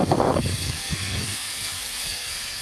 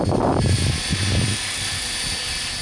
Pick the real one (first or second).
second